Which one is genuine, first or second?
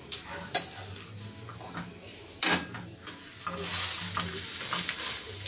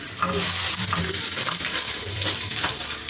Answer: first